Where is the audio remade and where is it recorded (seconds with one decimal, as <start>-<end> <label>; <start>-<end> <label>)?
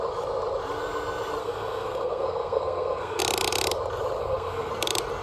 0.0-1.4 recorded; 1.4-3.2 remade; 3.2-4.2 recorded; 4.2-4.7 remade; 4.7-5.2 recorded